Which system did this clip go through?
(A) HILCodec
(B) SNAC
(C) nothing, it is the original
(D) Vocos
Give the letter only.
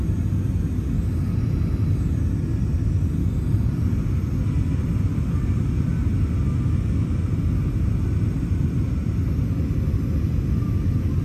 C